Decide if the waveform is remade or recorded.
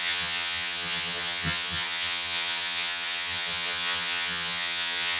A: remade